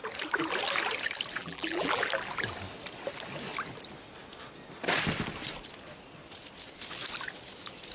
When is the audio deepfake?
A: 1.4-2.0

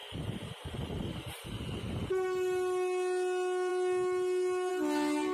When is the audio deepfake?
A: 0.0-1.6

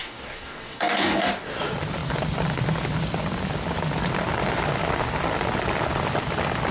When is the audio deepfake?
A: 0.0-1.3

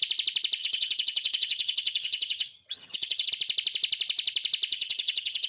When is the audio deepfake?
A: 0.6-3.3; 4.7-5.5

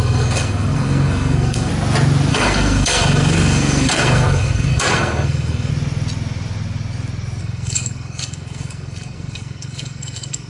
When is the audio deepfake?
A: 0.0-1.7; 2.3-5.7; 7.4-10.5